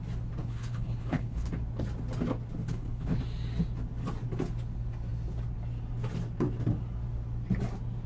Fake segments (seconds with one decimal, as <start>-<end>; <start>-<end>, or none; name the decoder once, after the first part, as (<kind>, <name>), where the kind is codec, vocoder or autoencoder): 0.4-1.5 (codec, HILCodec); 2.6-3.2